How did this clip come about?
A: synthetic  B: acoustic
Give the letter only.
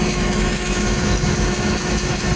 A